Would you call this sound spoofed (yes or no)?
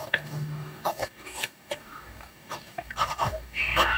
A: yes